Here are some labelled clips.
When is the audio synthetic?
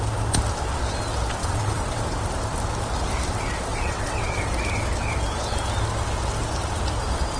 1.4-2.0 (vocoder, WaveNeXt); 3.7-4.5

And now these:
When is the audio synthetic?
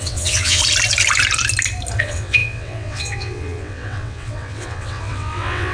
0.0-0.6 (vocoder, WaveNeXt); 2.0-5.7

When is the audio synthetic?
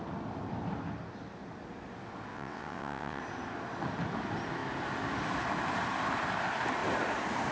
2.3-3.2 (vocoder, WaveNeXt)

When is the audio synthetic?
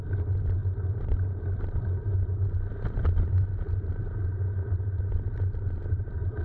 none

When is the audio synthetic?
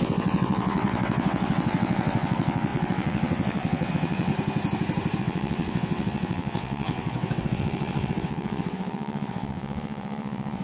0.0-4.3 (vocoder, WaveNeXt); 5.2-10.6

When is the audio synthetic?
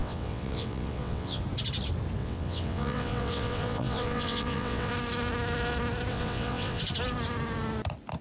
0.0-1.4 (vocoder, WaveNeXt); 2.2-4.9; 6.1-6.8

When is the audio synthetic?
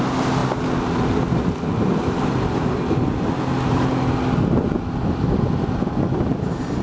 none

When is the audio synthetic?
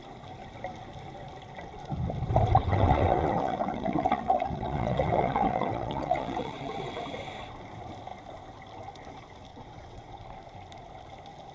2.6-7.0 (vocoder, WaveNeXt); 9.5-10.2